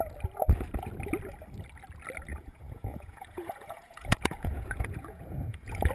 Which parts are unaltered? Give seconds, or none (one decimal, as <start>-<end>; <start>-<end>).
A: 0.0-2.3